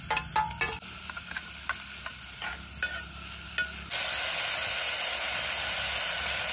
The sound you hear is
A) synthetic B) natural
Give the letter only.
B